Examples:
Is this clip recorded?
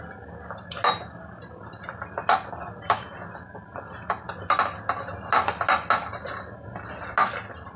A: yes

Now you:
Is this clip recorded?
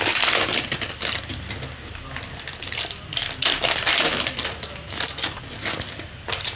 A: yes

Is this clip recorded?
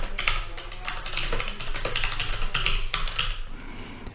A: yes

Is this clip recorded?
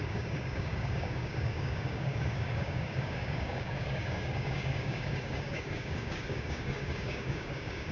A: no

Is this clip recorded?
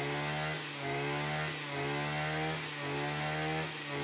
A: yes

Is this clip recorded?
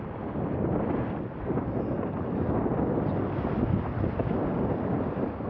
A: yes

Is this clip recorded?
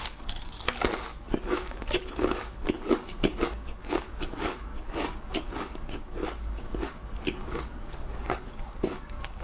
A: no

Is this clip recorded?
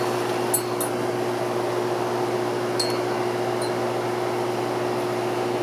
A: yes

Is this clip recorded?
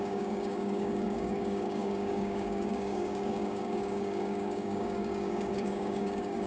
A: no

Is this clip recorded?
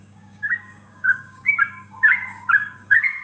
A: no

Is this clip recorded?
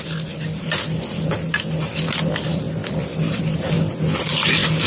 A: yes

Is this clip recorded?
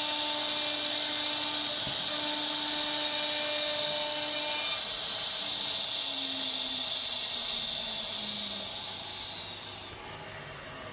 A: yes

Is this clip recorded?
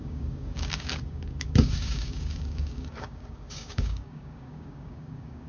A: no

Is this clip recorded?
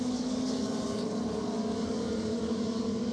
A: no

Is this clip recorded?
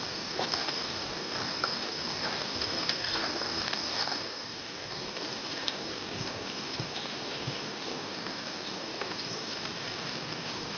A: no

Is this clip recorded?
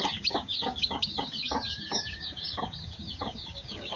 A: no